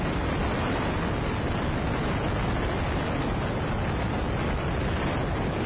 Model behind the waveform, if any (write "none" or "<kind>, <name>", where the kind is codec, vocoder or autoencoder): none